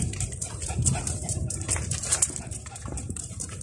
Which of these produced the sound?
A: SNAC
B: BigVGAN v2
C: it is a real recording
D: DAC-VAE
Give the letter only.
B